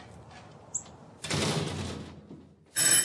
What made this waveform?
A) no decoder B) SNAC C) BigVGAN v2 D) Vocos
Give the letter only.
A